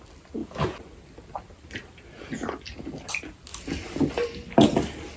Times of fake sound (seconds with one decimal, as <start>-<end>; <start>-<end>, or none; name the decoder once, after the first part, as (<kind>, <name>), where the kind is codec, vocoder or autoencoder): none